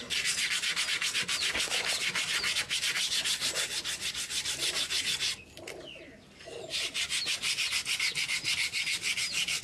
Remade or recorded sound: recorded